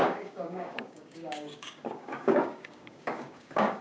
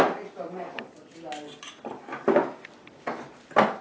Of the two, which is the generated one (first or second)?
first